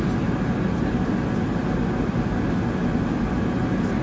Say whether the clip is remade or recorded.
recorded